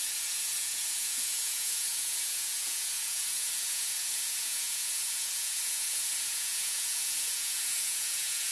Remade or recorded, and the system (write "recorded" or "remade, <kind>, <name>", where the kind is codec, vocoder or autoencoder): remade, vocoder, Vocos